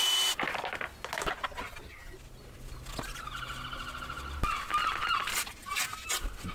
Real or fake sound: real